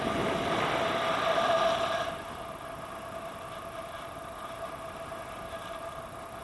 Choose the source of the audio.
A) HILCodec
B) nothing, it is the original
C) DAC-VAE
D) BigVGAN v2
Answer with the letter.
B